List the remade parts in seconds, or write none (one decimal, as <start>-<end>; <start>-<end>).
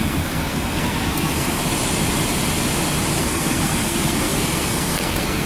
0.0-1.6; 3.2-5.5